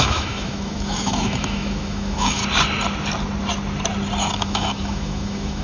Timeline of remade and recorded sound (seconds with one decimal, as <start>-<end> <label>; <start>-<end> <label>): 0.0-2.4 remade; 2.4-4.3 recorded; 4.3-5.6 remade